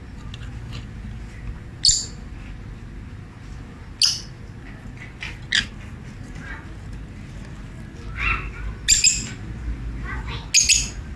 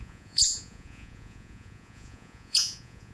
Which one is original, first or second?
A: first